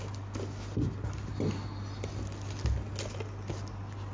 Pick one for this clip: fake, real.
real